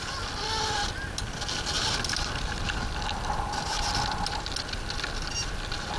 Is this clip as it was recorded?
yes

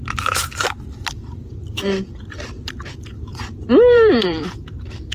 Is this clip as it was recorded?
no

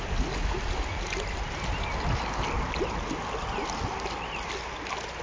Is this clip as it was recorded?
yes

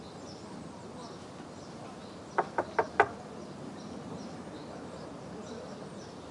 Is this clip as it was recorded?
yes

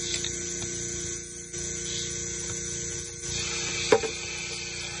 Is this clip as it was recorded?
yes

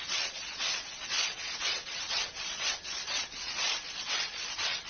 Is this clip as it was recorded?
no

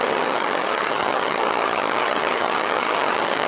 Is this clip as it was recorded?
no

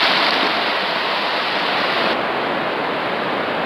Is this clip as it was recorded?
yes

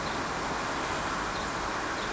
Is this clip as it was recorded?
yes